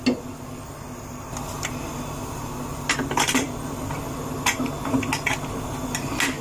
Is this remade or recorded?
recorded